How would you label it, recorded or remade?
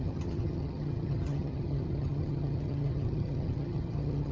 remade